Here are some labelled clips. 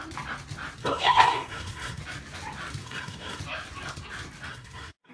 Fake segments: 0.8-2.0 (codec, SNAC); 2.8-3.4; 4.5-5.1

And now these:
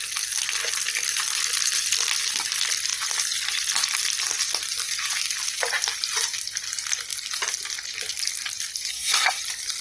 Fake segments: 8.9-9.4 (codec, SNAC)